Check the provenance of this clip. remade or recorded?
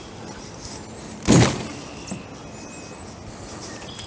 recorded